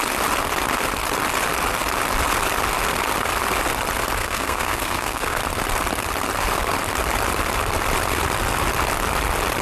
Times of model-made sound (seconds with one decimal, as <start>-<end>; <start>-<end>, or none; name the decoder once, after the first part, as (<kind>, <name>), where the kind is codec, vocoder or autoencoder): 4.2-5.4 (codec, SNAC)